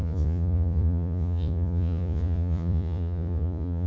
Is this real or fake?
fake